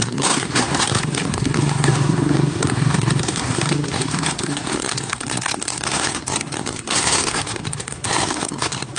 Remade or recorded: remade